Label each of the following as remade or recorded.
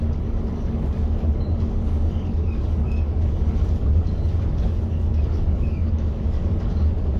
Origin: remade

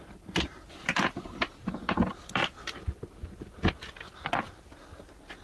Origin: recorded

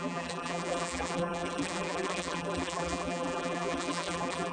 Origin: remade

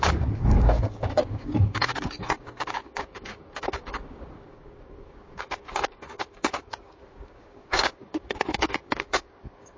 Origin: remade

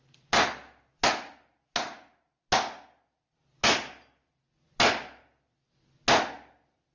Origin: recorded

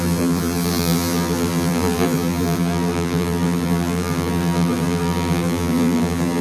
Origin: remade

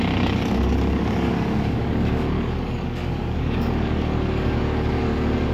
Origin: remade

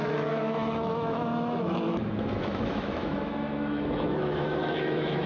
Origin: remade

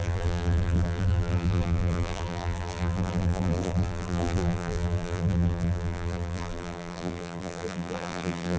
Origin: remade